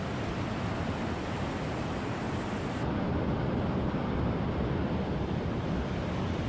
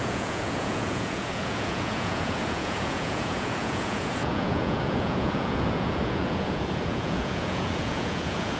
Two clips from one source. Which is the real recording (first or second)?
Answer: first